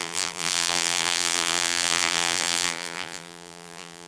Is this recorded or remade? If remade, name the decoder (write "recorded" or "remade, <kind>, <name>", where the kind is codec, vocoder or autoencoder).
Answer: remade, vocoder, BigVGAN v2